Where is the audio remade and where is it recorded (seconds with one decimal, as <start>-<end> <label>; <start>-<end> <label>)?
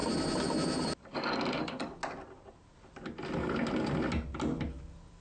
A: 0.0-1.6 recorded; 1.6-2.0 remade; 2.0-4.7 recorded; 4.7-5.2 remade